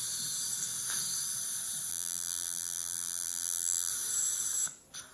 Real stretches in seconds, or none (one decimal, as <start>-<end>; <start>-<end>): 0.0-1.9; 3.9-5.1